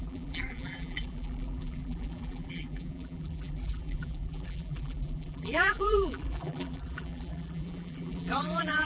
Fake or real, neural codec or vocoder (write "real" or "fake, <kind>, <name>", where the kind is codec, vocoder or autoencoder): fake, vocoder, BigVGAN v2